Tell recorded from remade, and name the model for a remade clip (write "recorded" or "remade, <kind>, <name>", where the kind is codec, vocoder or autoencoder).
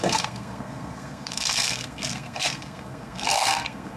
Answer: remade, codec, SNAC